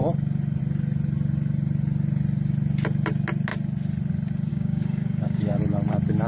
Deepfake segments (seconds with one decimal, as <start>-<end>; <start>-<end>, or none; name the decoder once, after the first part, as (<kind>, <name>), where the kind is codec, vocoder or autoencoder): 4.5-5.6 (codec, DAC)